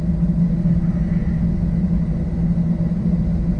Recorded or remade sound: recorded